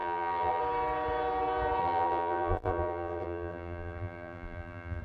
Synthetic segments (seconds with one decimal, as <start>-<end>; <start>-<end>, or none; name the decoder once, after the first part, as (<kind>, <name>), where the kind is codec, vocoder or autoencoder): 0.0-0.6 (vocoder, BigVGAN v2); 1.8-5.0